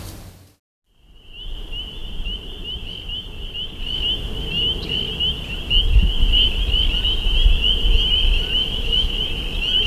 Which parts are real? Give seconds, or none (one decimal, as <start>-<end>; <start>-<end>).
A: 0.0-8.6; 9.2-9.9